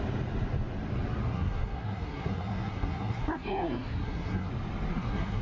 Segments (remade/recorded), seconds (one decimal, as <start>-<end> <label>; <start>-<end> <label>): 0.0-1.3 recorded; 1.3-4.5 remade; 4.5-4.9 recorded; 4.9-5.4 remade

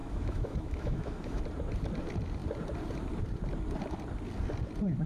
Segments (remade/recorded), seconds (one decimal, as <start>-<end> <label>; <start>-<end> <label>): 0.0-1.4 remade; 1.4-5.1 recorded

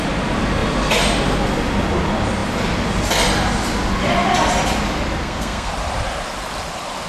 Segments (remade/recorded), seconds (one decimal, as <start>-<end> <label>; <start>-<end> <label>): 0.0-5.2 recorded; 5.2-5.7 remade; 5.7-7.1 recorded

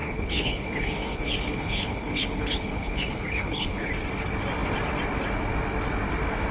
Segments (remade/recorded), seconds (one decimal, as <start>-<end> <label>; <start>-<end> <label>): 0.0-3.9 remade; 3.9-6.5 recorded

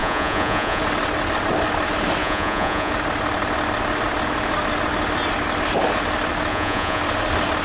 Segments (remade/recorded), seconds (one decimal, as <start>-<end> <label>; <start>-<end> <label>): 0.0-0.8 remade; 0.8-2.2 recorded; 2.2-2.9 remade; 2.9-6.5 recorded; 6.5-7.0 remade; 7.0-7.6 recorded

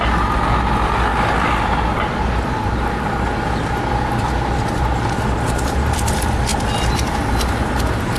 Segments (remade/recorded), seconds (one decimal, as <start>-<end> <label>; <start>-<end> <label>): 0.0-8.2 recorded

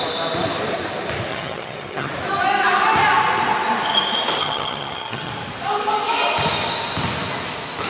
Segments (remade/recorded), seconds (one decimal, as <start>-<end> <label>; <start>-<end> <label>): 0.0-1.3 recorded; 1.3-2.1 remade; 2.1-4.4 recorded; 4.4-5.3 remade; 5.3-7.9 recorded

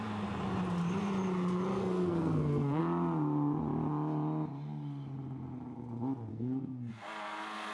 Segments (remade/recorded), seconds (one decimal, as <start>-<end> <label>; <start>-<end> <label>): 0.0-1.7 recorded; 1.7-2.8 remade; 2.8-6.3 recorded; 6.3-6.9 remade; 6.9-7.7 recorded